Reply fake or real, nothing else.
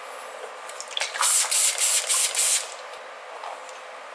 real